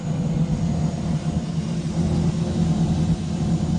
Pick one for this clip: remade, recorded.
recorded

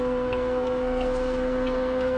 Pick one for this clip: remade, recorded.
remade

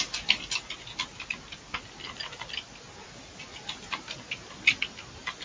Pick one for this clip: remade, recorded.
recorded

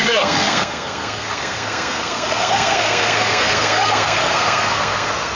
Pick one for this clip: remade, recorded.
remade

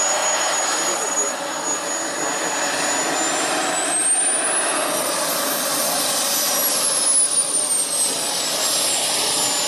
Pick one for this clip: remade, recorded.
recorded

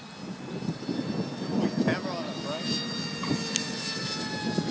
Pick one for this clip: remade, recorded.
recorded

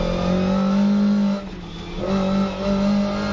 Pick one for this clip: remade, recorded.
recorded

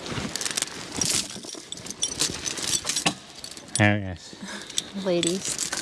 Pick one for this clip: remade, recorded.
recorded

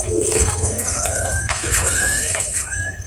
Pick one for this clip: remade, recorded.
remade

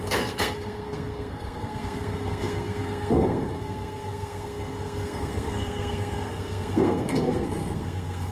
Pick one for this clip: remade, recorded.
remade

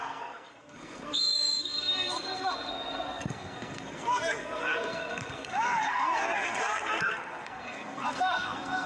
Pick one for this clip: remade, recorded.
remade